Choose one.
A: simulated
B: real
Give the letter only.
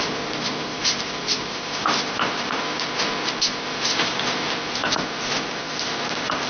A